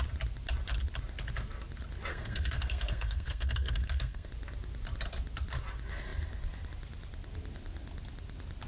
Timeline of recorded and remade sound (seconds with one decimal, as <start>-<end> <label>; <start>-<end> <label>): 0.0-2.1 recorded; 2.1-4.3 remade; 4.3-8.7 recorded